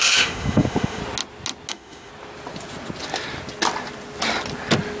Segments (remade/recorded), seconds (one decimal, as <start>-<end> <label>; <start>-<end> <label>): 0.0-1.0 remade; 1.0-1.7 recorded; 1.7-2.1 remade; 2.1-5.0 recorded